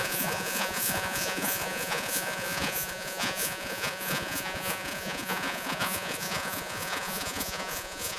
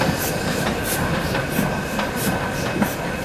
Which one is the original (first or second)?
second